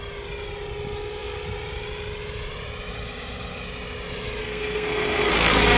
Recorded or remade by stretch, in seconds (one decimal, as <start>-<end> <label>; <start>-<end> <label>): 0.0-4.4 recorded; 4.4-5.3 remade; 5.3-5.8 recorded